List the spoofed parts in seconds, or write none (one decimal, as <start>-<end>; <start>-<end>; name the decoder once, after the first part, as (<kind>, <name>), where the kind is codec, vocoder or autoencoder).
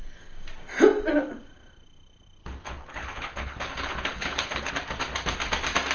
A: 2.4-4.7 (codec, HILCodec)